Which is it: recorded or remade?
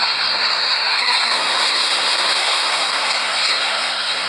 remade